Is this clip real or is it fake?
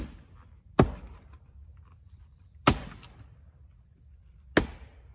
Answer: real